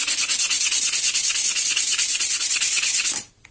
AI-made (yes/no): no